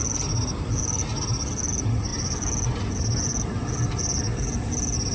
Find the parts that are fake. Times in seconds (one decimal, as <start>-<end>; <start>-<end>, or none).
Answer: none